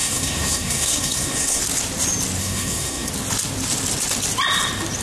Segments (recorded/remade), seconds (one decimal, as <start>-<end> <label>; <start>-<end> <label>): 0.0-1.6 remade; 1.6-2.4 recorded; 2.4-3.1 remade; 3.1-5.0 recorded